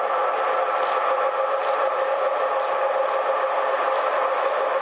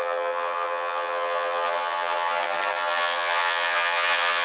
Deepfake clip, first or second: second